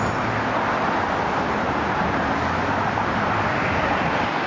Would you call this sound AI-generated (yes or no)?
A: no